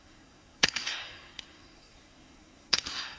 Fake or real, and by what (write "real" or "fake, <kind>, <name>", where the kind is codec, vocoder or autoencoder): fake, codec, SNAC